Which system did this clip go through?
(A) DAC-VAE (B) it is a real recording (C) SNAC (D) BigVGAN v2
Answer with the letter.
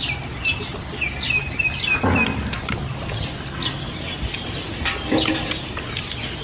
B